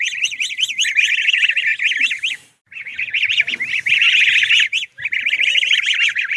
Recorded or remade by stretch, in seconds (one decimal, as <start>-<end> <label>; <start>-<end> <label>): 0.0-1.7 remade; 1.7-2.3 recorded; 2.3-2.9 remade; 2.9-3.5 recorded; 3.5-6.4 remade